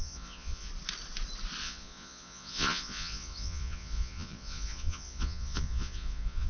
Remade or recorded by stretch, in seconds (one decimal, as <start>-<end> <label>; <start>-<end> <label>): 0.0-0.7 remade; 0.7-1.6 recorded; 1.6-6.5 remade